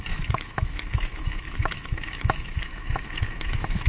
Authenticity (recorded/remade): remade